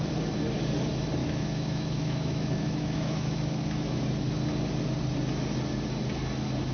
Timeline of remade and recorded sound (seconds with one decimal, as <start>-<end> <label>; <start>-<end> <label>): 0.0-1.2 recorded; 1.2-4.0 remade; 4.0-6.7 recorded